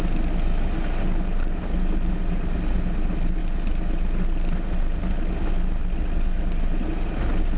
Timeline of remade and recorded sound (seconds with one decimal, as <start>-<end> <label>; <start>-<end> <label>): 0.0-7.6 recorded